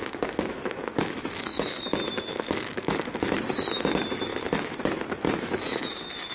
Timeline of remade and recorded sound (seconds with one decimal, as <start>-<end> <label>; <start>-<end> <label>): 0.0-6.3 remade